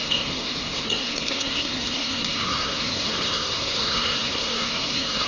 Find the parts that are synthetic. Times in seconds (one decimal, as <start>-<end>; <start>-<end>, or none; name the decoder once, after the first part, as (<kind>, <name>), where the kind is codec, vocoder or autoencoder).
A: 0.0-5.3 (codec, SNAC)